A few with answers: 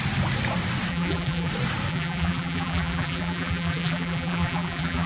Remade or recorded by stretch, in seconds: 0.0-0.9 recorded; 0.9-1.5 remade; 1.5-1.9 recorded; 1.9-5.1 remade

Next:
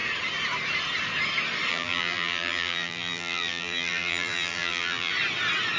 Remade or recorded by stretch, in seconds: 0.0-1.7 recorded; 1.7-5.1 remade; 5.1-5.8 recorded

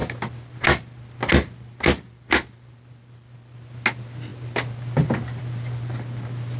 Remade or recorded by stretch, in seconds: 0.0-6.6 recorded

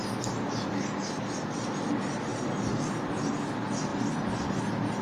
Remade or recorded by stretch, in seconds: 0.0-5.0 recorded